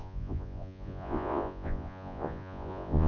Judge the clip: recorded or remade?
remade